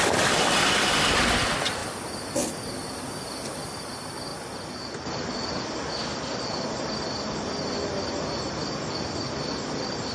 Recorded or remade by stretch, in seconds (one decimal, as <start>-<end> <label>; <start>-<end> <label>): 0.0-10.1 recorded